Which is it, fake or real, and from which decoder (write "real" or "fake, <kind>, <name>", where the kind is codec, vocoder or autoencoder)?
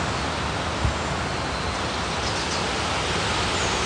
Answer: real